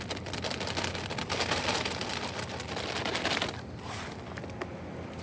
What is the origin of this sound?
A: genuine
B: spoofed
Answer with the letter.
A